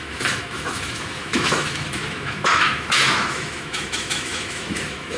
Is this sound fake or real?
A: fake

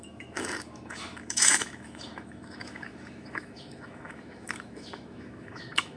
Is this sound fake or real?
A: fake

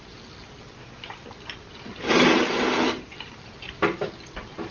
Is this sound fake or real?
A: real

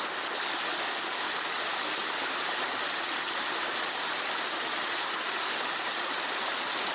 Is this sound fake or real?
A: real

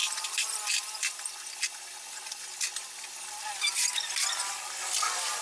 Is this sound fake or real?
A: real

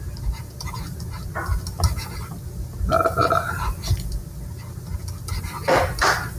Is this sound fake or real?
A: real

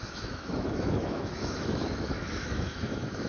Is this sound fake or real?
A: fake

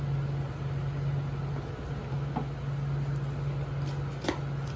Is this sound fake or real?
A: real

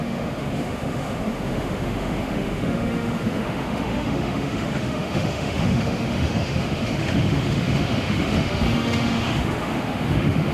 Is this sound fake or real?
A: fake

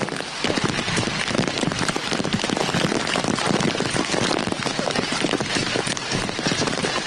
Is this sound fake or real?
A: real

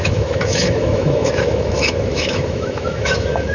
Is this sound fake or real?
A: fake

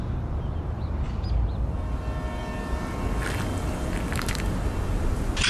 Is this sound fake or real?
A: real